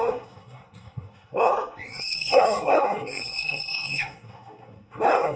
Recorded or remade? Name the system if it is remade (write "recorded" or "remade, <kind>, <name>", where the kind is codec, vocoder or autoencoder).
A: remade, codec, SNAC